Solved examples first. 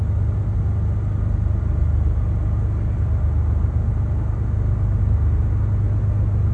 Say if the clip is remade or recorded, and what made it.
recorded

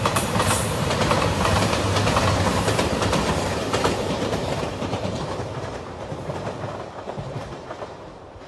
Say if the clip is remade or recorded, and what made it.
remade, vocoder, BigVGAN v2